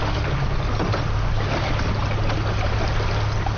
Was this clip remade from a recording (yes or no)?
no